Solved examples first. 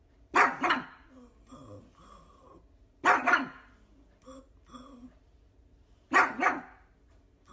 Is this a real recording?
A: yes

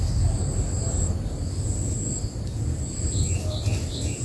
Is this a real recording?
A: yes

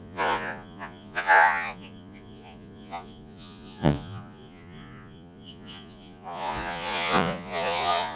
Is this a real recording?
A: no